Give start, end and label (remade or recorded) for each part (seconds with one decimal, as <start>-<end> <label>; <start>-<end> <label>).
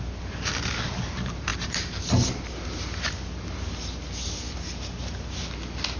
0.0-6.0 recorded